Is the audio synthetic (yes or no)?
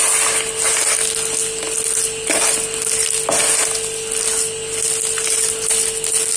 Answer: no